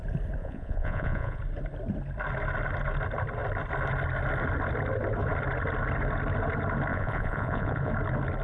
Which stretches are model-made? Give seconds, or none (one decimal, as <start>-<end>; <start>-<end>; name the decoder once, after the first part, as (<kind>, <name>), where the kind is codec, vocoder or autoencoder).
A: 0.4-1.4 (vocoder, Vocos); 6.9-7.9